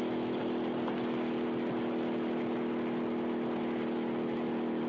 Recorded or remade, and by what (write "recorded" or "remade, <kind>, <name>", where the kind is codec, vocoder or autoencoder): recorded